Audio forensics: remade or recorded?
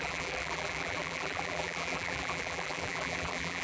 remade